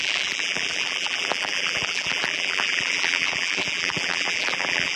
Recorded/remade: remade